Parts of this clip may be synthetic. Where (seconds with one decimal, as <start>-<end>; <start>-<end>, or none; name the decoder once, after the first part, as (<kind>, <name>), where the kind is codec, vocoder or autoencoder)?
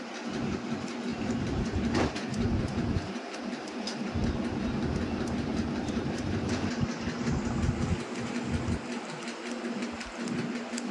1.1-3.8 (vocoder, BigVGAN v2); 5.5-7.7